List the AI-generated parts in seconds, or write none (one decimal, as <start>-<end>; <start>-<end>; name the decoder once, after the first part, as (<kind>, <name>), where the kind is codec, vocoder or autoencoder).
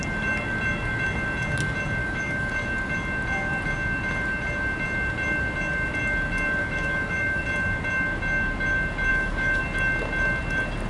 2.0-2.5 (autoencoder, DAC-VAE); 6.6-7.4; 9.1-9.6